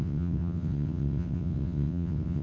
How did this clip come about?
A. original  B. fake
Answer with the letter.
B